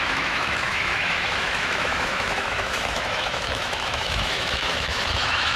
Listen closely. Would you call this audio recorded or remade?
remade